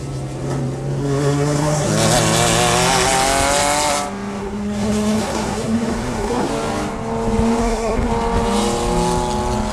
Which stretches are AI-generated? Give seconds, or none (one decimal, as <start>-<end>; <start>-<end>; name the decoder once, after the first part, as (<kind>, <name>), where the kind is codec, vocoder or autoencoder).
1.0-1.9 (codec, SNAC); 4.4-6.5; 7.6-8.1